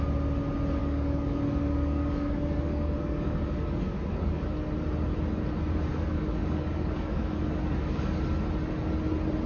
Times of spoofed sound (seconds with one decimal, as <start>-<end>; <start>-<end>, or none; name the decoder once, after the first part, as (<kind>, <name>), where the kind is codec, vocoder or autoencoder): 0.8-4.7 (codec, DAC); 5.9-8.2